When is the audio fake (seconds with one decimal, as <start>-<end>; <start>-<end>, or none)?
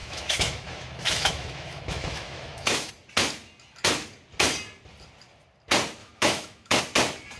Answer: 0.0-2.9; 6.0-6.8